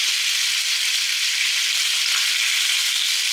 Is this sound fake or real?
real